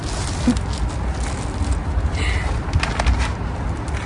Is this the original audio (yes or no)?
yes